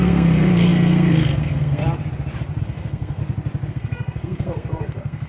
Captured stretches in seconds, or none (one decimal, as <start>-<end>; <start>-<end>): 1.8-2.6; 3.2-3.7